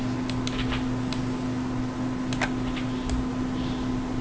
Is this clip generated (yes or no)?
no